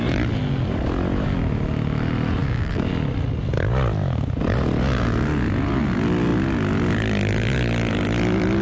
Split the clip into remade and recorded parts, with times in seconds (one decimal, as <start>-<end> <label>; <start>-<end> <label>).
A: 0.0-2.4 recorded; 2.4-2.9 remade; 2.9-8.6 recorded